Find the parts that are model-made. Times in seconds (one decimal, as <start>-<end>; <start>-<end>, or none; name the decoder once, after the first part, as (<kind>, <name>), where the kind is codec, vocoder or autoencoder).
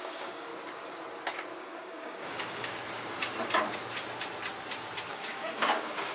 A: 0.0-0.5 (codec, DAC); 1.6-2.8; 5.1-6.1